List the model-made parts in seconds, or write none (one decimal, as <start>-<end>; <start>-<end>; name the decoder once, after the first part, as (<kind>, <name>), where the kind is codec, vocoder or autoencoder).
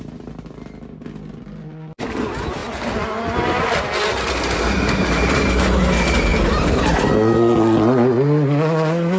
6.3-7.1 (vocoder, BigVGAN v2)